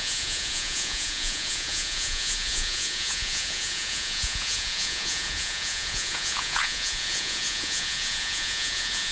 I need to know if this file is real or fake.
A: fake